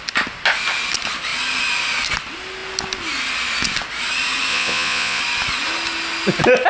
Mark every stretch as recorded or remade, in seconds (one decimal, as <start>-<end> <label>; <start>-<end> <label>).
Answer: 0.0-4.5 recorded; 4.5-5.2 remade; 5.2-6.7 recorded